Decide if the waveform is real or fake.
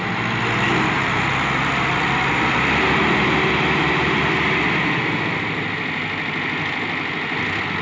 real